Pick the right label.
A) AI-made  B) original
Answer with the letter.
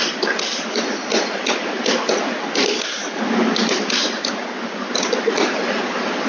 B